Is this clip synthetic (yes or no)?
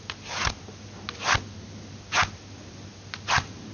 no